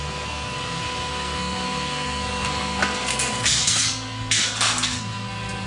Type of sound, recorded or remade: remade